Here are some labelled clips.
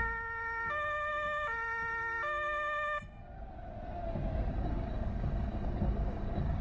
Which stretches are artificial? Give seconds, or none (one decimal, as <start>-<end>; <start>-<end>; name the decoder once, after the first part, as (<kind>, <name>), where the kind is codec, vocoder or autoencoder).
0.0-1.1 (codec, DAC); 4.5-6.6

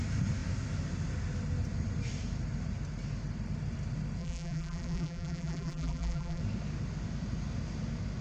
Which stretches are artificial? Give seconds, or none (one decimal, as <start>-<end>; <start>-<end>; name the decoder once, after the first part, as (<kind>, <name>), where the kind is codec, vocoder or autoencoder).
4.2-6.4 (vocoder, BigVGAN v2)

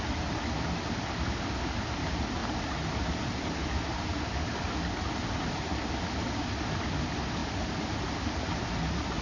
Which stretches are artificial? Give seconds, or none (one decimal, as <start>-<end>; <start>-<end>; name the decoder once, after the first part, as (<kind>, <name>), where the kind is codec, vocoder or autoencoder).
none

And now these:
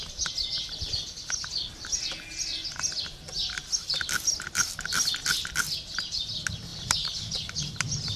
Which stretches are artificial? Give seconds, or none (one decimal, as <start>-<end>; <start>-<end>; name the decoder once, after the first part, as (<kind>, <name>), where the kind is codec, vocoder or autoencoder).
6.7-7.7 (vocoder, BigVGAN v2)